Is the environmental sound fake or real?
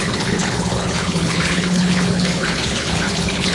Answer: fake